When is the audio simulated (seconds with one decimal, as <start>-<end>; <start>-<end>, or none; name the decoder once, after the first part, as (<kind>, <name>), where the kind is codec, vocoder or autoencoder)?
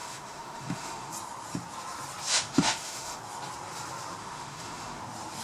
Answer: 0.0-1.1 (autoencoder, DAC-VAE); 2.3-3.2; 4.2-5.0